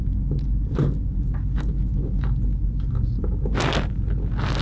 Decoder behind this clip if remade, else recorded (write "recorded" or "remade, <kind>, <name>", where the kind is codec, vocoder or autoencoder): recorded